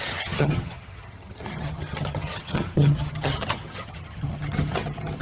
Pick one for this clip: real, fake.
fake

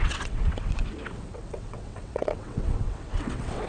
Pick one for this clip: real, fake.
fake